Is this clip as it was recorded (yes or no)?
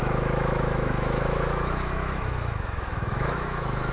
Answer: no